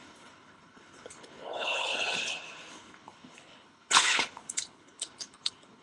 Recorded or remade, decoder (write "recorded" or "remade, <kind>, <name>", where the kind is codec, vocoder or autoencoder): remade, codec, HILCodec